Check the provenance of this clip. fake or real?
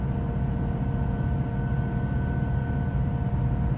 real